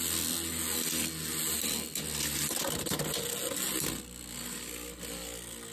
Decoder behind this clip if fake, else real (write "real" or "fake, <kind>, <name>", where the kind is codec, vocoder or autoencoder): real